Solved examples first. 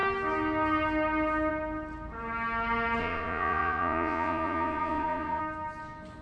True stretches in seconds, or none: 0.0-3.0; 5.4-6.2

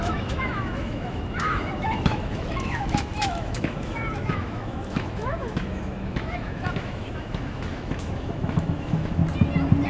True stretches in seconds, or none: 9.2-9.9